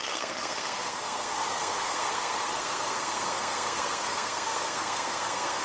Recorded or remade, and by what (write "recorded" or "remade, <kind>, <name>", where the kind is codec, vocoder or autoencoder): remade, codec, SNAC